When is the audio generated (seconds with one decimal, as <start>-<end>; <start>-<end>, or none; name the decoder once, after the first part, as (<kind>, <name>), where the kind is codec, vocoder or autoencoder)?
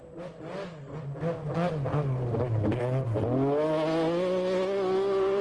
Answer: none